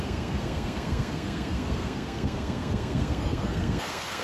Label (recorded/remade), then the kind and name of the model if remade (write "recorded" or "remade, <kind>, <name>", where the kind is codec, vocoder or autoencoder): remade, codec, SNAC